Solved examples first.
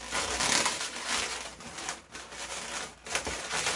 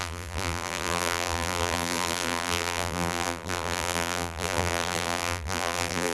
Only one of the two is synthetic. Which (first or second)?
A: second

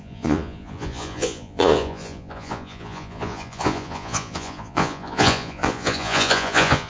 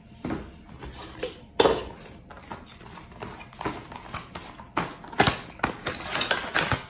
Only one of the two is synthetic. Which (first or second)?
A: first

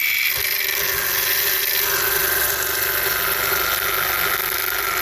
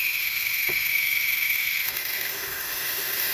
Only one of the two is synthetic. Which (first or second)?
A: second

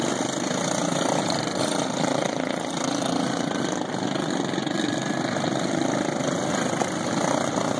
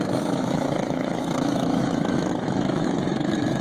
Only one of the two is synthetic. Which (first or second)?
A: second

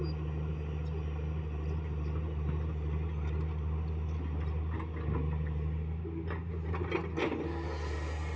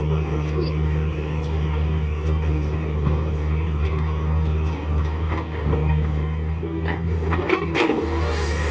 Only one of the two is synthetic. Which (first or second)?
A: second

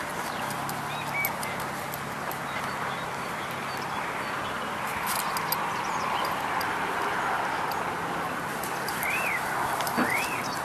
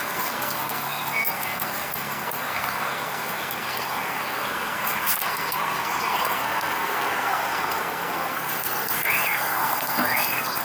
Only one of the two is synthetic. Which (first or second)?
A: second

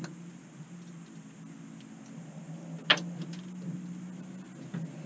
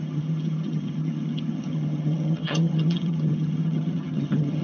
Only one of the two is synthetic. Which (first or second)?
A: second